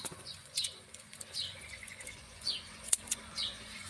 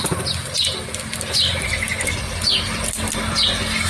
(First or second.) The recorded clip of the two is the second